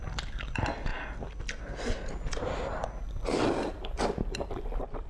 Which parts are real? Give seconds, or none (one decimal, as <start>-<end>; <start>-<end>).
0.0-5.1